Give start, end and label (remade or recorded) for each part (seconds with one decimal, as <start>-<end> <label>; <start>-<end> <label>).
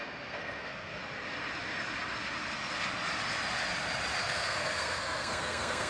0.0-1.0 remade; 1.0-4.2 recorded; 4.2-5.9 remade